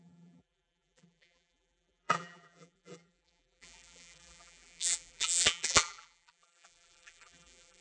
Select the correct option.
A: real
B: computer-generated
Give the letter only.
B